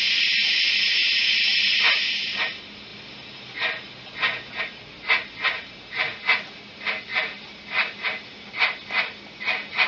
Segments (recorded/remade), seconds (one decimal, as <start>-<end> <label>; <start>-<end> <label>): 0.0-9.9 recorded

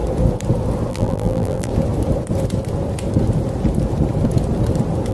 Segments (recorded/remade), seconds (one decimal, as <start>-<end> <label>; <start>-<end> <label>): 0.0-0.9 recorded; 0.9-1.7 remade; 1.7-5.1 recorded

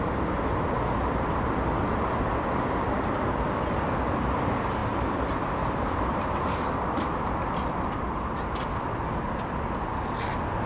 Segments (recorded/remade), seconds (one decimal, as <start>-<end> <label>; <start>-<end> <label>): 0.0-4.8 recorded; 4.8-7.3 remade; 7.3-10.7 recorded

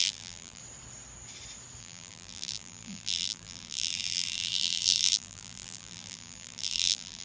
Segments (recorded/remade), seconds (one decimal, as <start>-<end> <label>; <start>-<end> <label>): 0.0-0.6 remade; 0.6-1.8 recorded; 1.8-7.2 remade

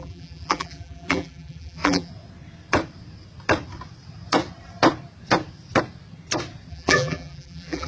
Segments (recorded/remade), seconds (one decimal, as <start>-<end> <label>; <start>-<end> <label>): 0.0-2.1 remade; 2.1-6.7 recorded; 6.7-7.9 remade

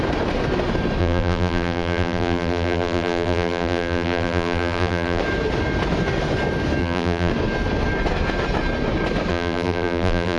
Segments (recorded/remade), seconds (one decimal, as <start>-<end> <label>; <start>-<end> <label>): 0.0-1.0 recorded; 1.0-5.2 remade; 5.2-6.8 recorded; 6.8-7.3 remade; 7.3-9.3 recorded; 9.3-10.4 remade